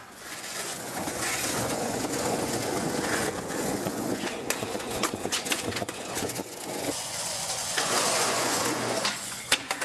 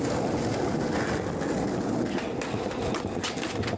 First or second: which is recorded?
second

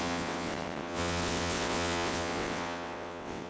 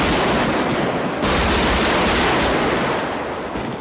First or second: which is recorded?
second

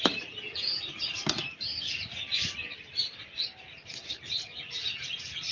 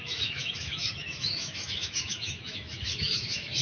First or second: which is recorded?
first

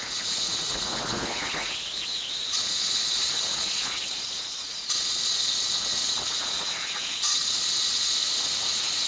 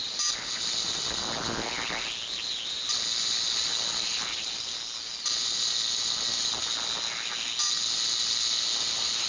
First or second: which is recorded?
second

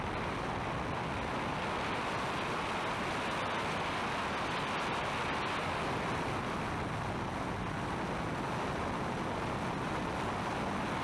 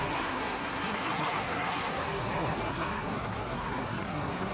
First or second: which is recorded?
first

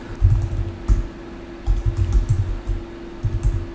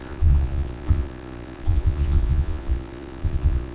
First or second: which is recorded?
first